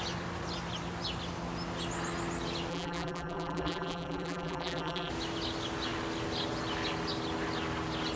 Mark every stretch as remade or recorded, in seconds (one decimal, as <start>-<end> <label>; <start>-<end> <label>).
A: 0.0-2.7 recorded; 2.7-5.1 remade; 5.1-8.2 recorded